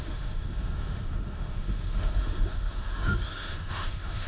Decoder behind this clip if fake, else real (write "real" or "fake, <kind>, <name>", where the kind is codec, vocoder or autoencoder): fake, autoencoder, DAC-VAE